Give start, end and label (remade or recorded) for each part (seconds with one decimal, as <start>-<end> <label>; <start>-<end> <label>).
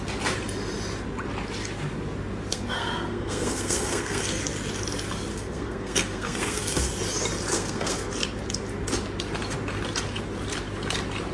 0.0-2.5 recorded; 2.5-4.4 remade; 4.4-5.3 recorded; 5.3-6.9 remade; 6.9-7.5 recorded; 7.5-8.1 remade; 8.1-11.3 recorded